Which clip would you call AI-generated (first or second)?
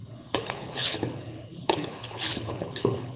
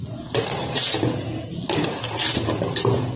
first